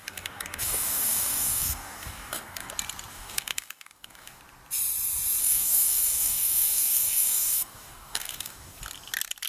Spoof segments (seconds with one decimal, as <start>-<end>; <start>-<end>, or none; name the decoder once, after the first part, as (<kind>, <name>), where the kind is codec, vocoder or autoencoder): 0.0-2.7 (codec, DAC); 3.1-4.4; 5.4-8.8